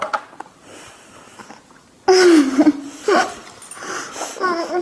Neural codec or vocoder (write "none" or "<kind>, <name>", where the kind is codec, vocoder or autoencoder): none